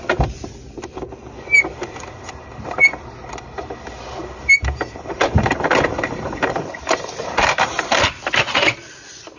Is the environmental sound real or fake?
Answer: real